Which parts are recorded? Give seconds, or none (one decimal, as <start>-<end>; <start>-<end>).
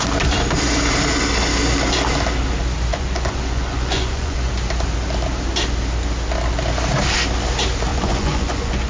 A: 0.0-2.9; 4.5-7.9